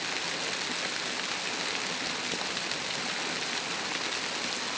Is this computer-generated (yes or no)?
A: no